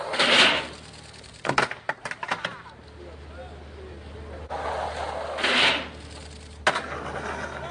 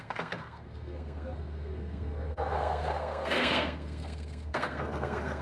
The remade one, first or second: second